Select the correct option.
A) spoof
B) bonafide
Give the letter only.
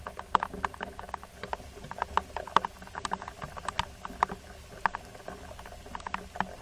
B